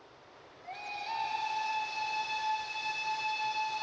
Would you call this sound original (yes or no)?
yes